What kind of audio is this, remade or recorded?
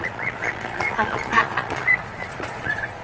remade